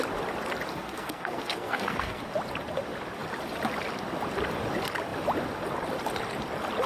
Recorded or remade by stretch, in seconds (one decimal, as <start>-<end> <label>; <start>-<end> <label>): 0.0-0.7 recorded; 0.7-2.2 remade; 2.2-6.9 recorded